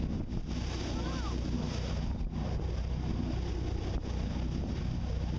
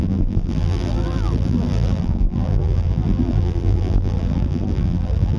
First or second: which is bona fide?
first